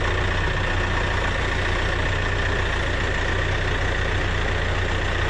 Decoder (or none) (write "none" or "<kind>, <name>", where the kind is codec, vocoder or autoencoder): none